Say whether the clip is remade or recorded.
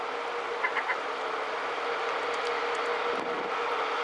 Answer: recorded